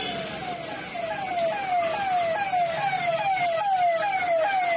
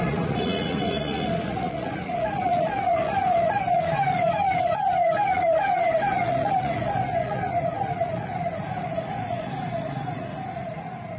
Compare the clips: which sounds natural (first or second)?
first